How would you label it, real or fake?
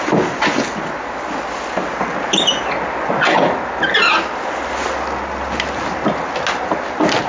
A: real